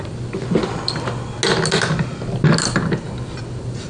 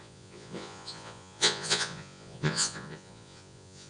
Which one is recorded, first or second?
first